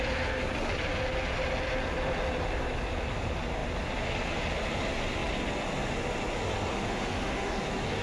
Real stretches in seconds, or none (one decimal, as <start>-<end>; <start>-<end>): 0.0-6.7; 7.6-8.0